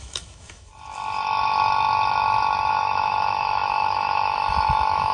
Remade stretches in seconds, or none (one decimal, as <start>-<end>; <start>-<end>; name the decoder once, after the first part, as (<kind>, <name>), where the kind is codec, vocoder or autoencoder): 0.0-0.7 (autoencoder, DAC-VAE); 2.7-5.1